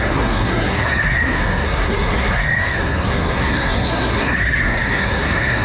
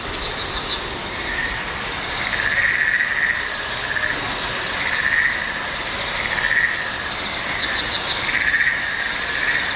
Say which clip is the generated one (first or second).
first